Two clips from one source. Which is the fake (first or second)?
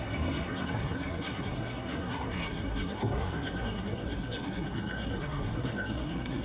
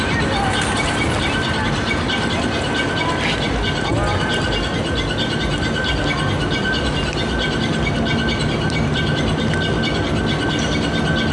first